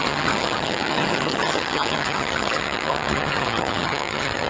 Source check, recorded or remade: remade